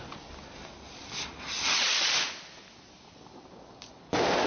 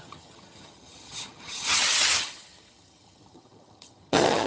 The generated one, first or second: second